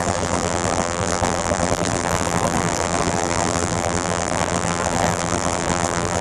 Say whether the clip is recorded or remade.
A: remade